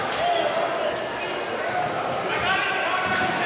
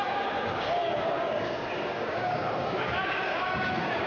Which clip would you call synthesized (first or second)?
second